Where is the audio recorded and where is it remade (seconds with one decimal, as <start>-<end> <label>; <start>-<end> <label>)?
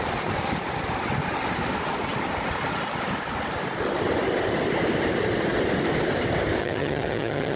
0.0-6.6 recorded; 6.6-7.6 remade